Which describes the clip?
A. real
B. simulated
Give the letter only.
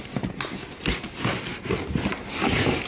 A